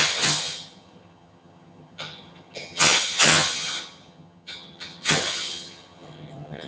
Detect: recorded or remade remade